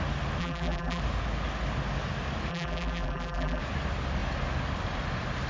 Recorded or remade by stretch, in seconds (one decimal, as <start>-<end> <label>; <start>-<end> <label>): 0.0-0.4 recorded; 0.4-1.0 remade; 1.0-2.5 recorded; 2.5-3.6 remade; 3.6-5.5 recorded